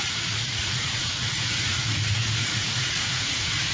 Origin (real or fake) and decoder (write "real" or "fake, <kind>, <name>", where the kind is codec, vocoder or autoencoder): fake, vocoder, Vocos